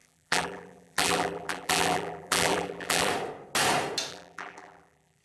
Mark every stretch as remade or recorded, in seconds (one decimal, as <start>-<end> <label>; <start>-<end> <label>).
0.0-3.1 remade; 3.1-4.1 recorded; 4.1-5.2 remade